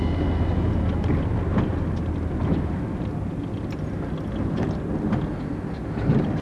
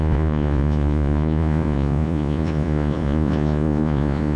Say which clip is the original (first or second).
first